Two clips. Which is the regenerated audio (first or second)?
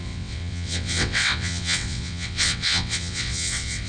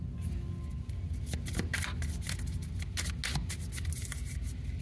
first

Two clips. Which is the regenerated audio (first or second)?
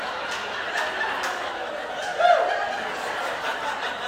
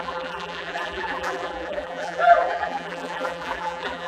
second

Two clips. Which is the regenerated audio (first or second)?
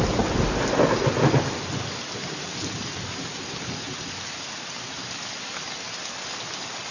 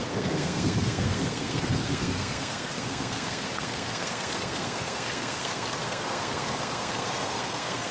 second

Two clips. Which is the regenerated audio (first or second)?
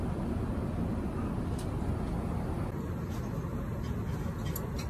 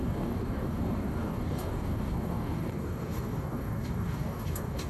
second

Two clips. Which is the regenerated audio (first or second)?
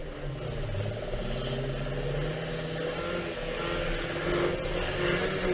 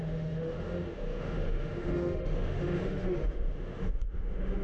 second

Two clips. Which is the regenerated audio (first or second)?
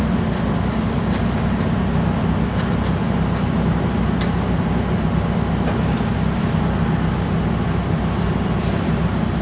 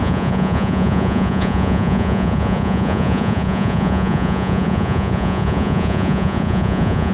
second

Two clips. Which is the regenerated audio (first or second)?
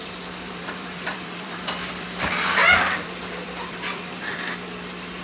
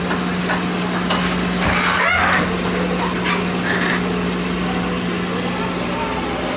first